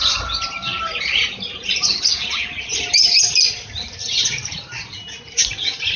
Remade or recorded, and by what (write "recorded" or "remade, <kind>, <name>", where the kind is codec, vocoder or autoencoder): remade, vocoder, BigVGAN v2